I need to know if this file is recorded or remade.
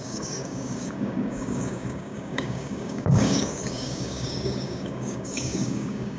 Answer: remade